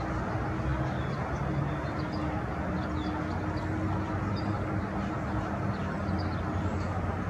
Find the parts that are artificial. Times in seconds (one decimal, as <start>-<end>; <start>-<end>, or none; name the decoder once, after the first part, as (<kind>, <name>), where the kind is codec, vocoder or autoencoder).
none